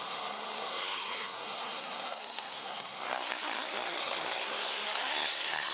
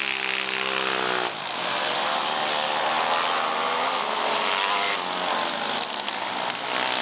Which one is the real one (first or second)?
second